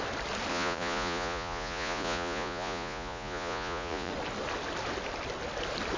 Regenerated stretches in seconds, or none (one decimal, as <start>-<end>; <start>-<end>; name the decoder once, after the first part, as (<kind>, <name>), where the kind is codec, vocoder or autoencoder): 0.5-4.1 (vocoder, Vocos)